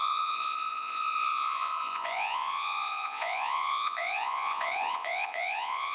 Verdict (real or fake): fake